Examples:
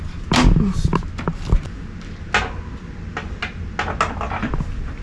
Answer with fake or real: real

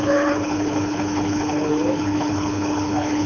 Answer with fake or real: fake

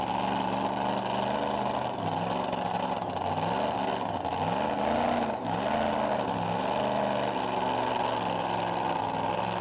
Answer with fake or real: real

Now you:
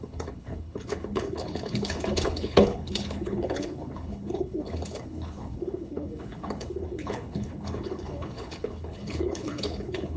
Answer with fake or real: fake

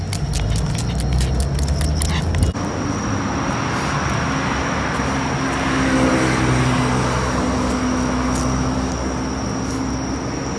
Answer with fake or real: real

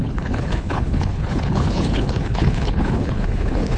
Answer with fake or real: fake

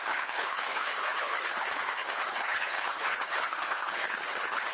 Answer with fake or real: fake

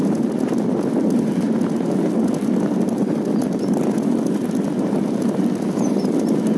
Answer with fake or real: real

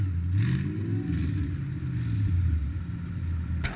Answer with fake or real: real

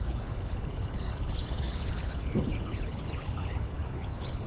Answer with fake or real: fake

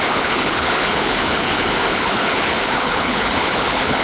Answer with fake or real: fake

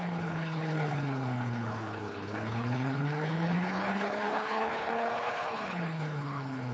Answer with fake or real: fake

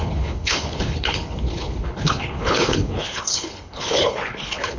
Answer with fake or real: fake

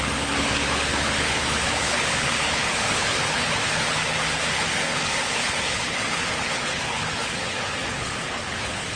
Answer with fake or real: fake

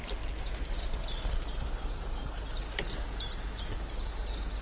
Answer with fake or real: real